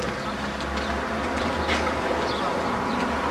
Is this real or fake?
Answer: real